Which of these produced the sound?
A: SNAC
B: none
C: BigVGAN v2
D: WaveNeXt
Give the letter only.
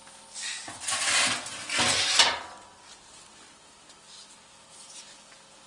B